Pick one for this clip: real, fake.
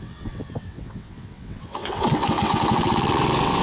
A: fake